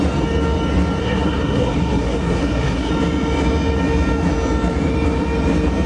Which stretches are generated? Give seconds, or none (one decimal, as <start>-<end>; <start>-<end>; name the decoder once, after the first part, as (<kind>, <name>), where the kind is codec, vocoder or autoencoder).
1.0-2.9 (codec, SNAC)